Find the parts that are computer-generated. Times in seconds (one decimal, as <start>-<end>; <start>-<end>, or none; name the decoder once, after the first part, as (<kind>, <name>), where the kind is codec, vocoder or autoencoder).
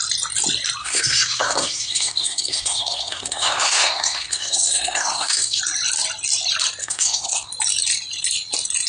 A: 0.8-5.6 (codec, SNAC); 6.8-7.5